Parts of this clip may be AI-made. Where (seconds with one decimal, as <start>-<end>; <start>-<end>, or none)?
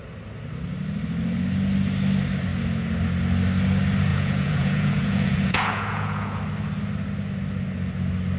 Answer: 4.1-6.4